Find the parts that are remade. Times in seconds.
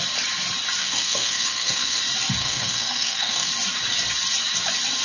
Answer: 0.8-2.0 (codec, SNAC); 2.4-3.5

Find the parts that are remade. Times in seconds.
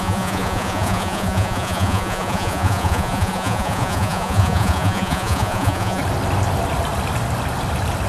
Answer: 0.0-6.0 (vocoder, Vocos)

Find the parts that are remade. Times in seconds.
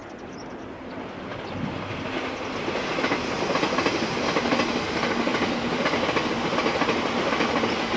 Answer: none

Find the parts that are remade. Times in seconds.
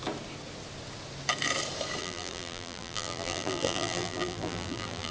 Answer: 2.0-5.1 (vocoder, BigVGAN v2)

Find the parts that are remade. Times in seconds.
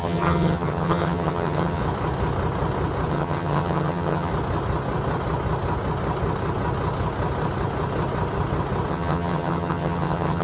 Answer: 0.0-1.8 (vocoder, HiFi-GAN); 3.1-4.3; 8.9-10.4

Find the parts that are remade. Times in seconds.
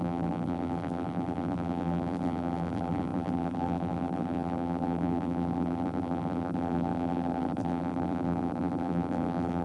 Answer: 0.0-9.6 (vocoder, BigVGAN v2)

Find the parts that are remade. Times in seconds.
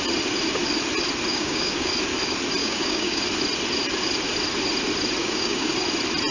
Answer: 1.3-1.9 (codec, DAC); 2.6-3.2; 5.2-5.7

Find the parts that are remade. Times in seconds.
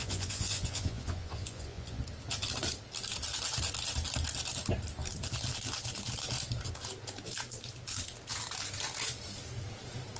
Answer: 0.0-2.0 (vocoder, Vocos)